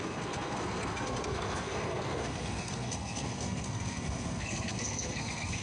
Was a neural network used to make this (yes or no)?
yes